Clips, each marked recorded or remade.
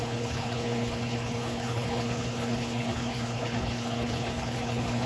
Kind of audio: remade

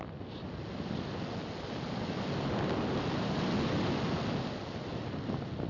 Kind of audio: recorded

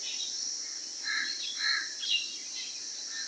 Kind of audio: recorded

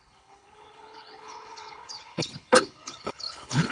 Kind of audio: remade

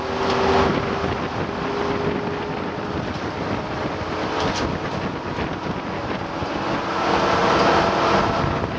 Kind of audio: recorded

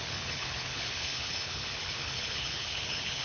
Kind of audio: remade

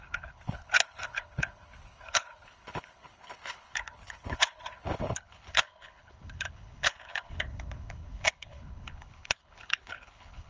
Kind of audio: remade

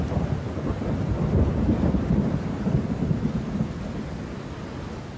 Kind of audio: recorded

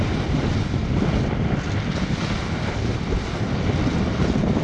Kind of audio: recorded